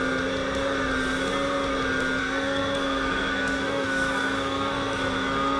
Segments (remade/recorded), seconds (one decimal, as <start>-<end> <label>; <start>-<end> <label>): 0.0-2.2 recorded; 2.2-5.6 remade